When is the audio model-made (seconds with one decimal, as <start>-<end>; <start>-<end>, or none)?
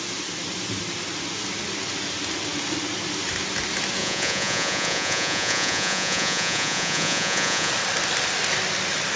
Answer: 4.0-7.7